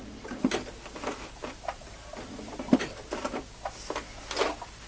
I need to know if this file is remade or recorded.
recorded